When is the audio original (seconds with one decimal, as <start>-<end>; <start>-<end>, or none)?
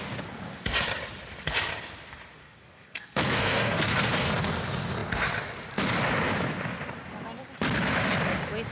0.0-2.4; 4.3-8.7